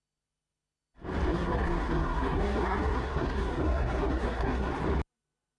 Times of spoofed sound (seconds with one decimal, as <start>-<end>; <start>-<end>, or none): 1.3-4.7